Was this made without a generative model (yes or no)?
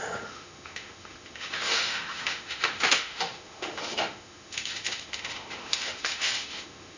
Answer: no